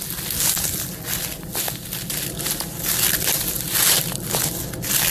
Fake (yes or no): no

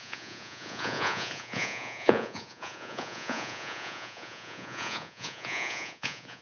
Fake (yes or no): yes